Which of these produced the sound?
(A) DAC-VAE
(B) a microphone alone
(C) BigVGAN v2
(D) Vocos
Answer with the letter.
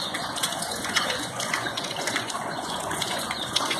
D